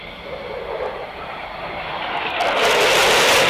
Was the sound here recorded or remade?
recorded